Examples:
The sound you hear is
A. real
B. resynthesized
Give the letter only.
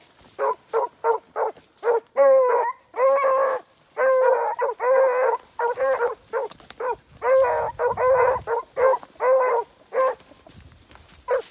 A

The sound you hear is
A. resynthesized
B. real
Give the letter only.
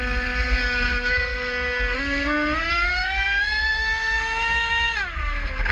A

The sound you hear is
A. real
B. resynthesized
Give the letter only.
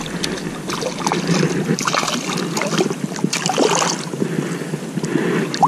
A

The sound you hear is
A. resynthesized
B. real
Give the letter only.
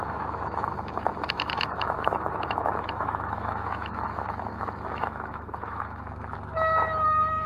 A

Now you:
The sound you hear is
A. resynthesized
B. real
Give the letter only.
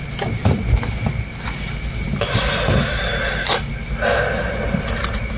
B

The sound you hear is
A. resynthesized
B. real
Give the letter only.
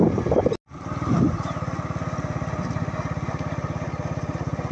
B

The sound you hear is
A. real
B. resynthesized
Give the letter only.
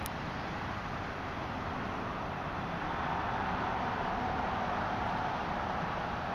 B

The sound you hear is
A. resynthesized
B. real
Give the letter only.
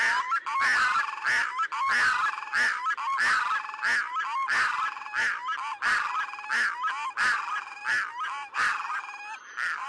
B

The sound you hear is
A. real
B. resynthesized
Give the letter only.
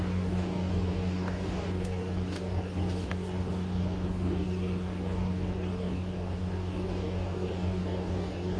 B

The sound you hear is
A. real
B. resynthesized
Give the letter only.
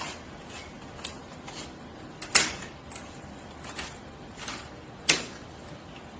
A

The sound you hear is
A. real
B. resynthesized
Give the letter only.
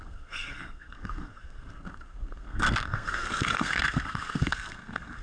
B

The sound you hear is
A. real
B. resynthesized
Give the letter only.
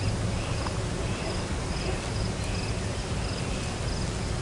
A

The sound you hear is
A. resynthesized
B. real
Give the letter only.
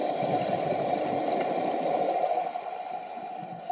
B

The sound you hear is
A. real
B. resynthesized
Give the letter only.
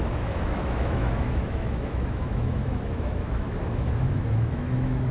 B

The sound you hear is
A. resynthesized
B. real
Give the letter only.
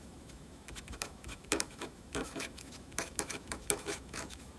A